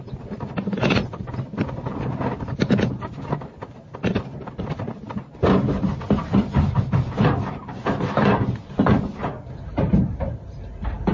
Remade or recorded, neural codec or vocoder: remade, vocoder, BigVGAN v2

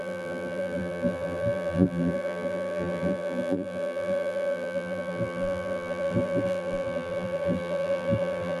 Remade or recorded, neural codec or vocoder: remade, vocoder, BigVGAN v2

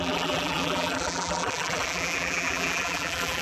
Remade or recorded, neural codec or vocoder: remade, vocoder, BigVGAN v2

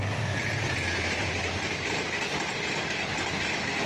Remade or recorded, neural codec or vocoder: recorded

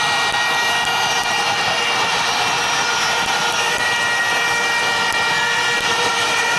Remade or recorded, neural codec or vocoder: recorded